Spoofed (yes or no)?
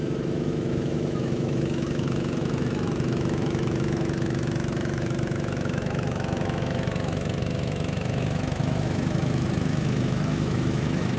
yes